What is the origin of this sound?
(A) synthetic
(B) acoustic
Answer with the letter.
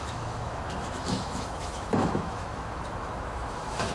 A